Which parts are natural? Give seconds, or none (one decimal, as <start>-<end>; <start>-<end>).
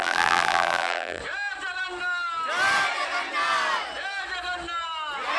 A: 1.2-5.4